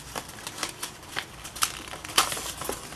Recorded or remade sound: recorded